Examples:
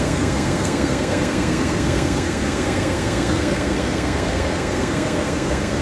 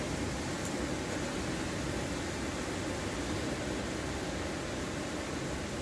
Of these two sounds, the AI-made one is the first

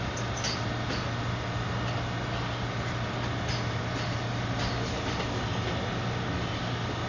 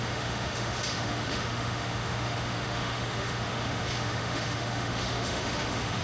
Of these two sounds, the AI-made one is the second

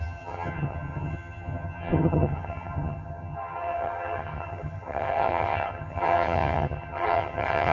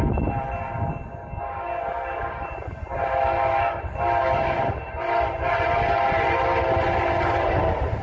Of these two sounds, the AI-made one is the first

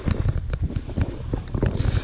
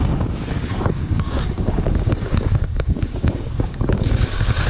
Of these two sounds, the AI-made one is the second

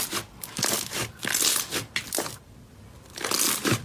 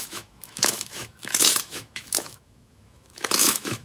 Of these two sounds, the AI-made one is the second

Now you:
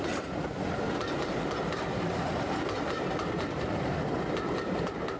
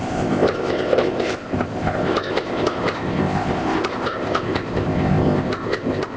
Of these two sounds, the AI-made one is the second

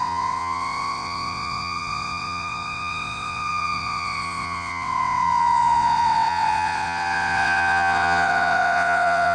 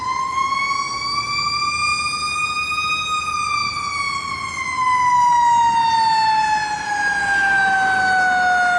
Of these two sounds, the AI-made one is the first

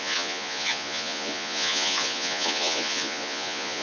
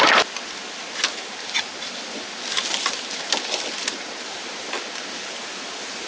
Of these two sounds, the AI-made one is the first